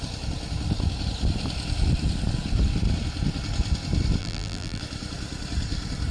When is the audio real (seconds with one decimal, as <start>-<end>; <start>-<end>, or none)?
0.0-4.2; 4.8-6.1